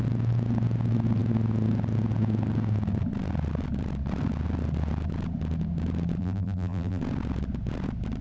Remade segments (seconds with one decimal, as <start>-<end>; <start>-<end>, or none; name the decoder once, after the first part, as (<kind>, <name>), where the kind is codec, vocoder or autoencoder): 6.2-7.0 (vocoder, BigVGAN v2)